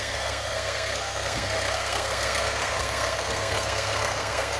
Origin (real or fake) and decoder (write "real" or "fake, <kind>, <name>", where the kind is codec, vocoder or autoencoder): fake, codec, SNAC